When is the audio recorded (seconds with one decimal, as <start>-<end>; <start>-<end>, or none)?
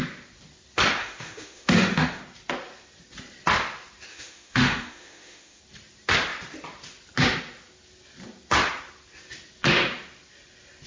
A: 0.0-1.0; 2.2-4.1; 5.6-10.9